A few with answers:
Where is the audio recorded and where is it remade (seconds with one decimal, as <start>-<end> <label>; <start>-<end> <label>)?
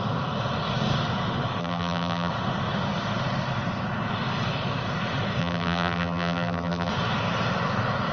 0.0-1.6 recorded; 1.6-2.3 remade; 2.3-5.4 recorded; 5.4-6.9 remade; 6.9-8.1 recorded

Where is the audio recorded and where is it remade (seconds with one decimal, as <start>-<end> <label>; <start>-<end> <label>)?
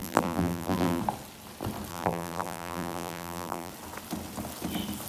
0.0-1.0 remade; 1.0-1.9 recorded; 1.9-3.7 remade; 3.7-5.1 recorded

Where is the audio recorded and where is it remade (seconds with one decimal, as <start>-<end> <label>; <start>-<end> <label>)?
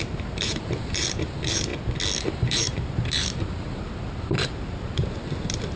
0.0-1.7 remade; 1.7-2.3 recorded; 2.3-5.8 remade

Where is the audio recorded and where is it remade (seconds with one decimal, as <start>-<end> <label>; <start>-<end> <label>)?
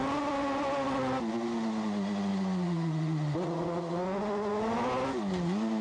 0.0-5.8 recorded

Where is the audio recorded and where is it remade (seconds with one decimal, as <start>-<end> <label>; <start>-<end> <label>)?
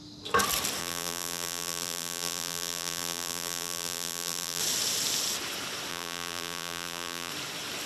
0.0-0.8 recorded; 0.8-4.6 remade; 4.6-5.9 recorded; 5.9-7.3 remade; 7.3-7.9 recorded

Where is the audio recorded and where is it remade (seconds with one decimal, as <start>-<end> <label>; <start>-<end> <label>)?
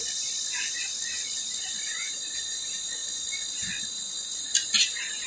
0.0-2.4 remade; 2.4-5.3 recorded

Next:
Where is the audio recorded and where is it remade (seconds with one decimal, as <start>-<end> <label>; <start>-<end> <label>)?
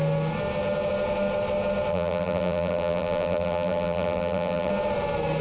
0.0-1.9 recorded; 1.9-4.7 remade; 4.7-5.4 recorded